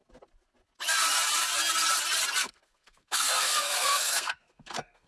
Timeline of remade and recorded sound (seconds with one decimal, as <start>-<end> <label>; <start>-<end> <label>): 0.0-2.4 recorded; 2.4-5.1 remade